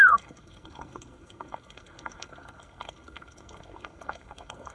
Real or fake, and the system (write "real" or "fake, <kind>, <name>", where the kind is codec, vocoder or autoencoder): fake, codec, SNAC